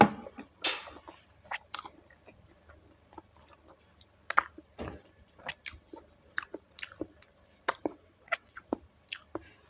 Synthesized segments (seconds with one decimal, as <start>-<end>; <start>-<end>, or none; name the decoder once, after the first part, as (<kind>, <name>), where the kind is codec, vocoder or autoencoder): 7.9-8.6 (vocoder, WaveNeXt)